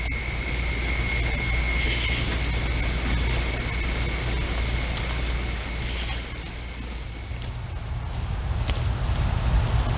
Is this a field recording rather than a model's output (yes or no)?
yes